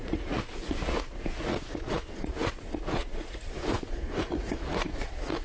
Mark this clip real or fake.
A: fake